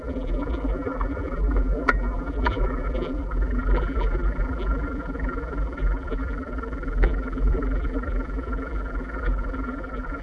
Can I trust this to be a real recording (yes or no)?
no